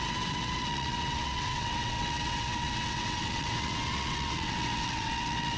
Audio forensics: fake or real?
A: fake